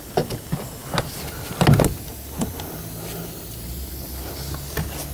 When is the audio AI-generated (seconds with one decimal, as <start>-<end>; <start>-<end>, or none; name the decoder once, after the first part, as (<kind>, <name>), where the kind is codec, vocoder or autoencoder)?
none